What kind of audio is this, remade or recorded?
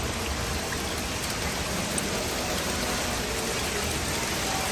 recorded